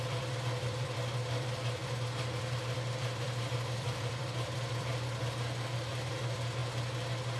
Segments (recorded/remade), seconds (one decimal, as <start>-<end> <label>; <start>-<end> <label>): 0.0-6.6 remade; 6.6-7.4 recorded